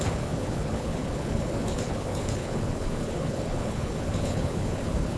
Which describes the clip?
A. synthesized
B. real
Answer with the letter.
A